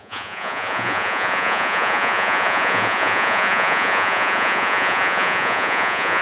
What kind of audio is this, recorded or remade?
remade